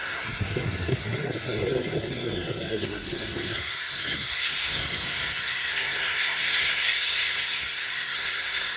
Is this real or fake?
fake